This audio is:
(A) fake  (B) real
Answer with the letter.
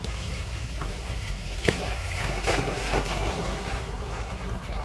A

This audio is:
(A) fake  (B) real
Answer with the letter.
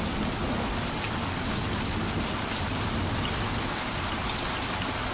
B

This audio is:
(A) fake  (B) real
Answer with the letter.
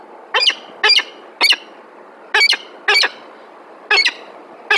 B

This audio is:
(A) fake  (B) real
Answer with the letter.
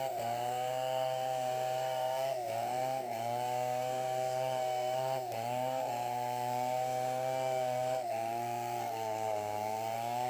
A